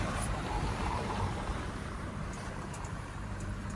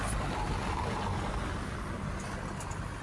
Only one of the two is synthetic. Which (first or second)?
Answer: first